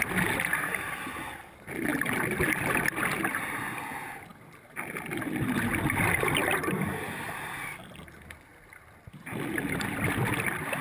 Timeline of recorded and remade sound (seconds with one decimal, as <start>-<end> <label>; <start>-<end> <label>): 0.0-4.3 recorded; 4.3-5.2 remade; 5.2-6.4 recorded; 6.4-7.5 remade; 7.5-10.8 recorded